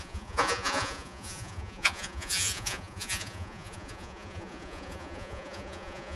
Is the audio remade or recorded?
remade